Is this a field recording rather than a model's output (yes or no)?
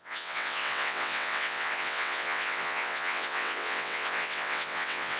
no